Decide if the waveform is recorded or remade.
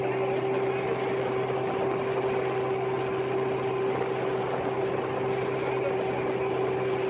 recorded